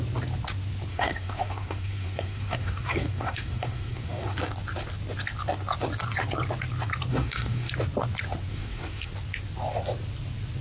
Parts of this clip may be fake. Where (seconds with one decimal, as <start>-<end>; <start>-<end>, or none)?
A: 0.9-4.5; 7.1-7.7; 8.5-9.1